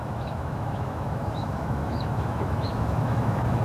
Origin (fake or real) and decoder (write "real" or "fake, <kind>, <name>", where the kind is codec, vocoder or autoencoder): fake, autoencoder, DAC-VAE